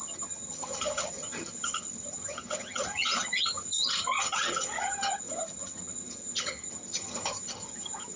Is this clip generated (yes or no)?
yes